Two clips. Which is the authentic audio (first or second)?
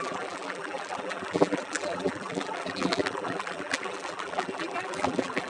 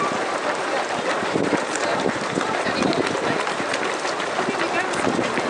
second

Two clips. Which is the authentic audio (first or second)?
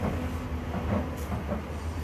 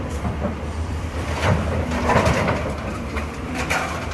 first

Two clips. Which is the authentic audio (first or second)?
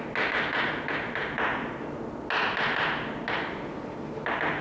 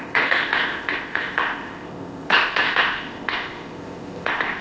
first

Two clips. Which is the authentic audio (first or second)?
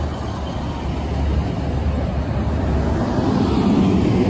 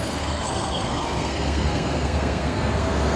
first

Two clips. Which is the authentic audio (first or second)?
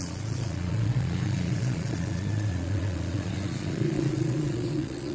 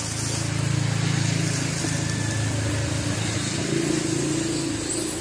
second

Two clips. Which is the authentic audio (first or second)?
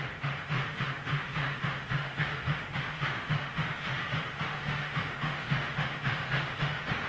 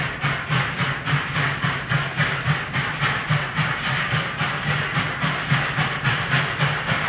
second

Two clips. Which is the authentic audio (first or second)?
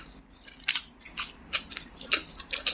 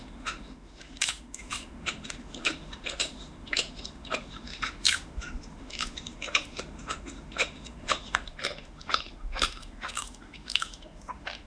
first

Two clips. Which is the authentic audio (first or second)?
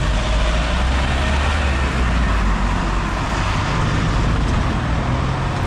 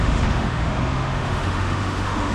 first